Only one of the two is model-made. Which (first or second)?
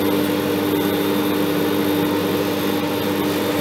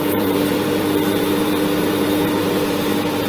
second